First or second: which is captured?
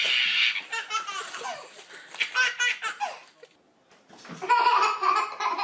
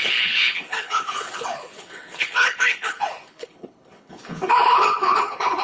first